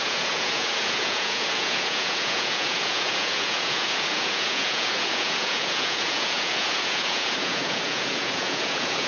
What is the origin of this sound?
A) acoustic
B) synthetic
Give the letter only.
B